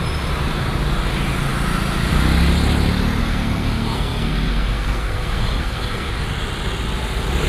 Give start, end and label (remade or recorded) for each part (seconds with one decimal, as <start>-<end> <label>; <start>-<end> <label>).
0.0-3.2 recorded; 3.2-6.1 remade; 6.1-7.5 recorded